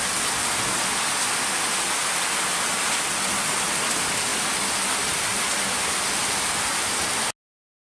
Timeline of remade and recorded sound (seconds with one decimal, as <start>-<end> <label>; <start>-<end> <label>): 0.0-7.9 recorded